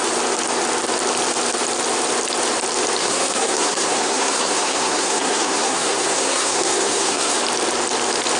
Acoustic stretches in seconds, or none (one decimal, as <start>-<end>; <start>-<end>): 0.0-3.0; 7.4-8.4